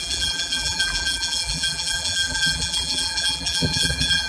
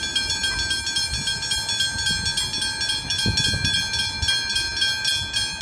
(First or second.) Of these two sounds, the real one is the second